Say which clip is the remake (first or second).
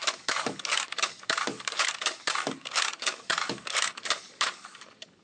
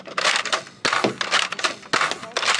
first